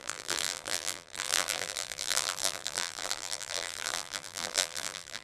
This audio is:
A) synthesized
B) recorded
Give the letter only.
A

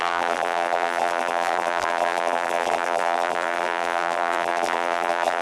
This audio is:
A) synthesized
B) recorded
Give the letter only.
A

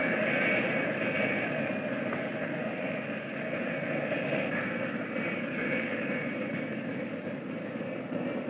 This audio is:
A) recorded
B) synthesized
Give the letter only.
B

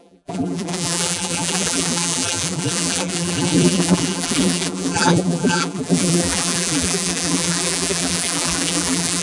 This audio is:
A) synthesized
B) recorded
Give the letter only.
A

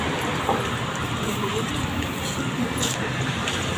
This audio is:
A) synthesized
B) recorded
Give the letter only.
B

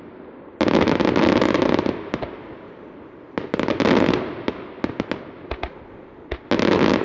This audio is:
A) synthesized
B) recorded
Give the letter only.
B